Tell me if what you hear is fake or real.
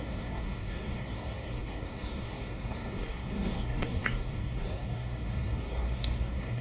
fake